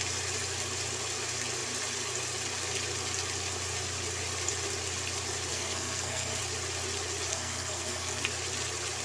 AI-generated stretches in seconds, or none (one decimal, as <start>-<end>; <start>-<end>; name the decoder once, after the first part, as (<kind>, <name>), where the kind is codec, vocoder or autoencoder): 5.5-6.4 (codec, SNAC); 7.3-8.2